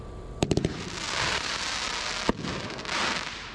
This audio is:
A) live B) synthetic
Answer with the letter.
A